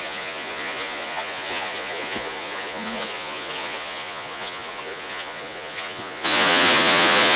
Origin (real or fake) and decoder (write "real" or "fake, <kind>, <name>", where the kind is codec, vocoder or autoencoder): fake, vocoder, Vocos